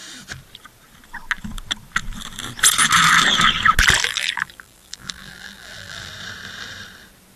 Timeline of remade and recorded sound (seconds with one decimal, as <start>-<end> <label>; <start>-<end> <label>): 0.0-4.0 recorded; 4.0-6.1 remade; 6.1-7.4 recorded